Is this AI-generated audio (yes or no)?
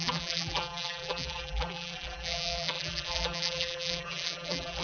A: yes